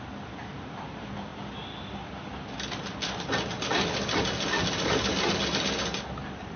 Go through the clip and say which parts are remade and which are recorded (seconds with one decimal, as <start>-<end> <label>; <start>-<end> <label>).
0.0-6.6 recorded